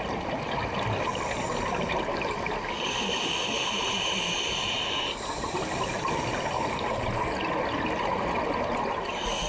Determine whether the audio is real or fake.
real